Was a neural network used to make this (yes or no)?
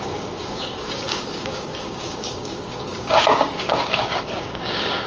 yes